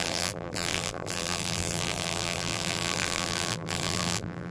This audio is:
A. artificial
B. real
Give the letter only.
A